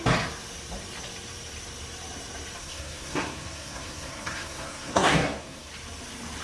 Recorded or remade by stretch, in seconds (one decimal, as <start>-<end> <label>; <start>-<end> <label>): 0.0-2.6 recorded; 2.6-5.7 remade; 5.7-6.4 recorded